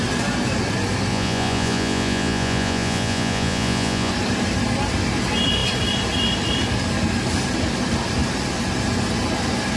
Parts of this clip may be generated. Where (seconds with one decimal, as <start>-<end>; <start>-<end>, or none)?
1.1-4.1